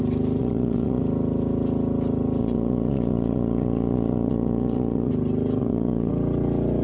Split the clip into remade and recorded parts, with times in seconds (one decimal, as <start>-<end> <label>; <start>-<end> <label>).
0.0-0.4 recorded; 0.4-1.0 remade; 1.0-2.4 recorded; 2.4-5.1 remade; 5.1-5.6 recorded; 5.6-6.1 remade; 6.1-6.8 recorded